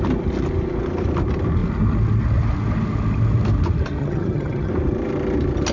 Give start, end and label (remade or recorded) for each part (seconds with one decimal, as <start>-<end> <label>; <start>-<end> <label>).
0.0-4.0 recorded; 4.0-4.7 remade; 4.7-5.7 recorded